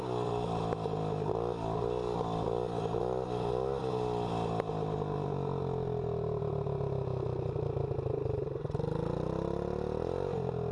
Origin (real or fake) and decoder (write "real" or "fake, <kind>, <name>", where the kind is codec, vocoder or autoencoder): real